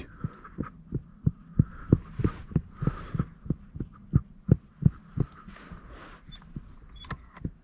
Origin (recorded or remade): recorded